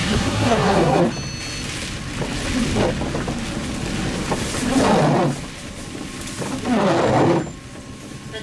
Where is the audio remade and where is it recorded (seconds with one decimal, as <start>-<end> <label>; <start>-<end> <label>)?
0.0-1.0 remade; 1.0-8.4 recorded